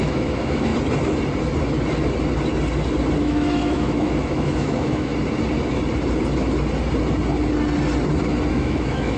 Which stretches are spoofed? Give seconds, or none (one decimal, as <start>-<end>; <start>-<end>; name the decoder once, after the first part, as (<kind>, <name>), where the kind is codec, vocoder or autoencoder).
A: 0.0-0.7 (autoencoder, DAC-VAE); 3.2-5.1; 8.5-9.2